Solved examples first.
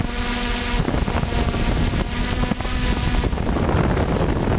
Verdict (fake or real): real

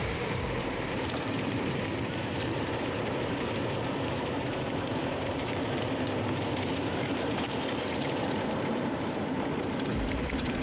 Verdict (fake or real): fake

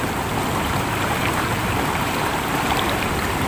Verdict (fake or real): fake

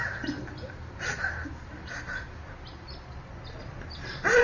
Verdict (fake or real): fake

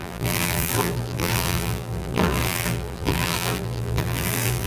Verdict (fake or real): fake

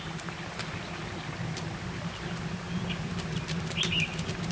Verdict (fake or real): real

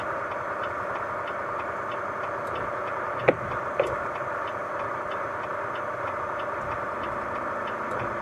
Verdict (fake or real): real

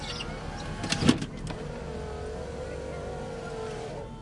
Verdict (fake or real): real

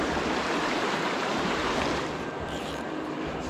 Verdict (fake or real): fake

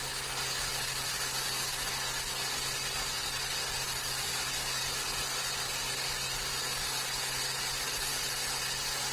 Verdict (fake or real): real